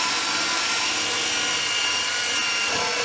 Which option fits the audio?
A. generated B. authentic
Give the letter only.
B